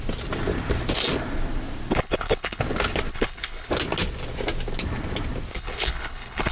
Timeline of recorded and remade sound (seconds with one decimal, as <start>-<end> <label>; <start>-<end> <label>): 0.0-1.9 recorded; 1.9-2.6 remade; 2.6-3.1 recorded; 3.1-3.7 remade; 3.7-5.5 recorded; 5.5-6.5 remade